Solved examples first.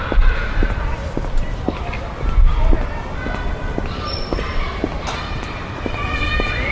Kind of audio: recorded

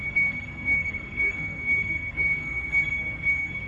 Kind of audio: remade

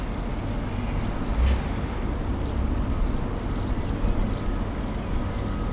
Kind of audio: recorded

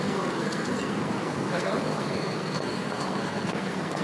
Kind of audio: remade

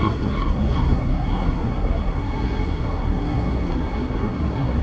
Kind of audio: remade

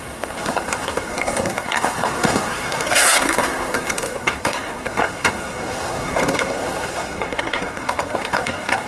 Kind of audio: remade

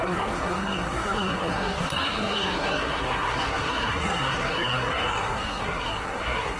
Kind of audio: remade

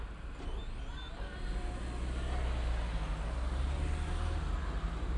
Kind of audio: recorded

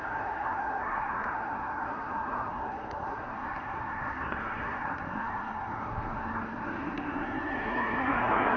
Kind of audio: remade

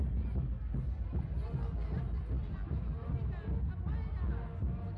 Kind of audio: recorded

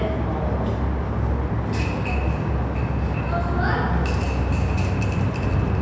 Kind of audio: recorded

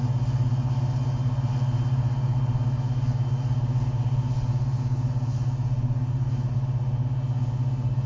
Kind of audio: recorded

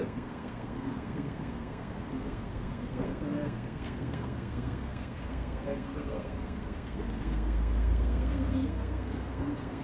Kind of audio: remade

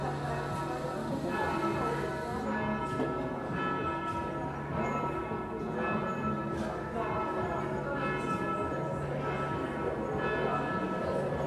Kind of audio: recorded